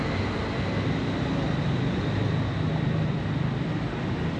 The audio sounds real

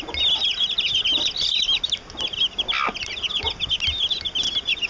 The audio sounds real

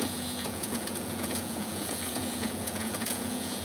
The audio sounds fake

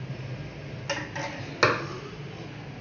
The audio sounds real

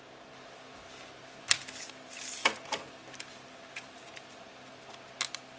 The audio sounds real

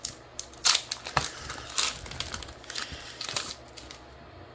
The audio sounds real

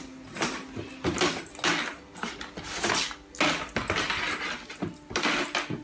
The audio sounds real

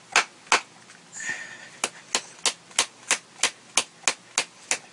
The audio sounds real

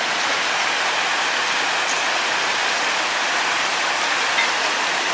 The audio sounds real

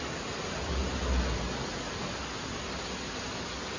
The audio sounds real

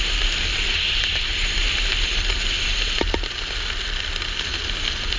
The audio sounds real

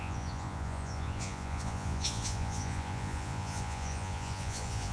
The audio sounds fake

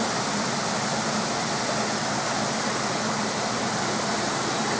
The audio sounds real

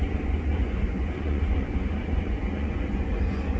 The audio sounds fake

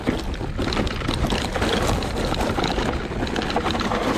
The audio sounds real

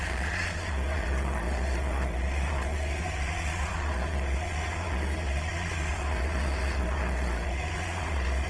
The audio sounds fake